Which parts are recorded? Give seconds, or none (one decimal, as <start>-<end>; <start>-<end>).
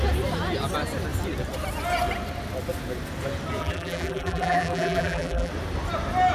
0.0-3.6; 5.5-6.3